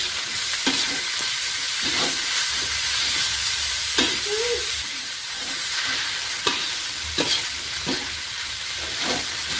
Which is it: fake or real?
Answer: fake